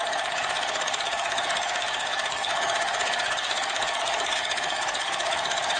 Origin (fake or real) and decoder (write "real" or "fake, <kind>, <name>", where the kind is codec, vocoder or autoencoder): fake, codec, DAC